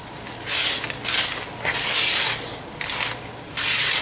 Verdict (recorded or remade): recorded